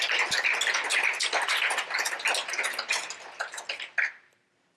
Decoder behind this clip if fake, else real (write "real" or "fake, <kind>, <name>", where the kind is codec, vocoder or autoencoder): real